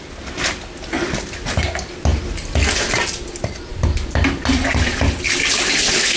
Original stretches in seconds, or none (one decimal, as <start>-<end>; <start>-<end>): 0.0-6.2